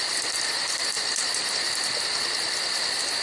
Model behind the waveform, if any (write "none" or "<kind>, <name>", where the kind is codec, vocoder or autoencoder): none